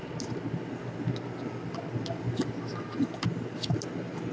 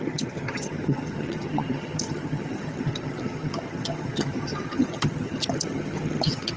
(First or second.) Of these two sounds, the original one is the first